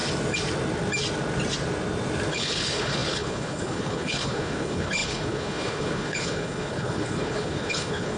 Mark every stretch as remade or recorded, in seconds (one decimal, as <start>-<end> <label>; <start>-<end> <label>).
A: 0.0-2.3 recorded; 2.3-8.2 remade